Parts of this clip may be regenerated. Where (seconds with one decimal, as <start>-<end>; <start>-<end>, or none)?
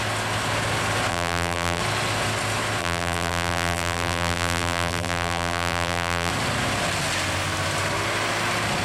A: 1.1-1.8; 2.8-6.3